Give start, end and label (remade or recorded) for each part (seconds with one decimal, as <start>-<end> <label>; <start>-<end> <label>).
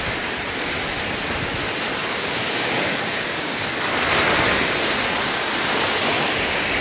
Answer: 0.0-2.0 recorded; 2.0-3.7 remade; 3.7-6.8 recorded